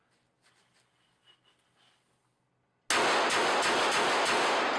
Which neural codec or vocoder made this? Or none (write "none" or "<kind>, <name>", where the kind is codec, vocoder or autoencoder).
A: none